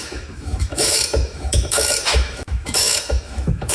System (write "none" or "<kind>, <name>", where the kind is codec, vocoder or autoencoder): autoencoder, DAC-VAE